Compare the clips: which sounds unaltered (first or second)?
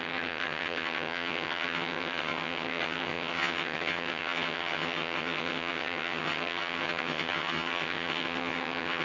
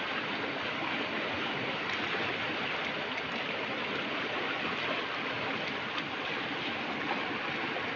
second